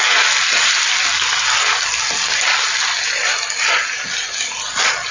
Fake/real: real